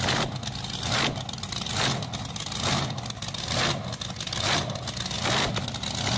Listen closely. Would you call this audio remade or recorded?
recorded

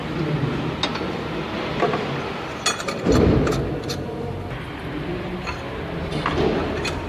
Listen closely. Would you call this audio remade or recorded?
recorded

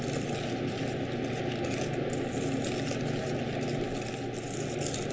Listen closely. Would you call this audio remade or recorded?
recorded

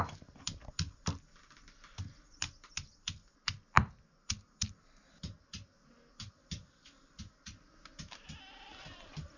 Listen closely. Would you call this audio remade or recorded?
recorded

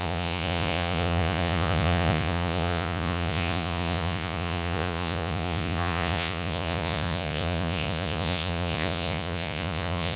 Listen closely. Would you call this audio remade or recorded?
remade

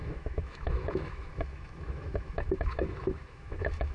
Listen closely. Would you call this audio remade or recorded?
remade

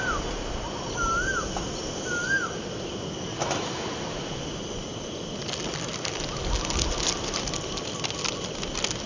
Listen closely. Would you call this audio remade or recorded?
recorded